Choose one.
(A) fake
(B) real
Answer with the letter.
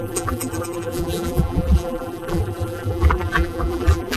A